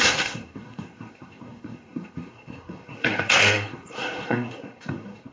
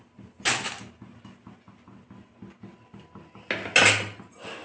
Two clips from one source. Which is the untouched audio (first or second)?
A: second